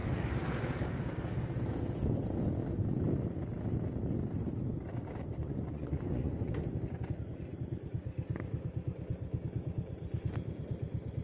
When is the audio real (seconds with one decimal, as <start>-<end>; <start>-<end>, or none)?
0.0-5.4; 6.5-11.2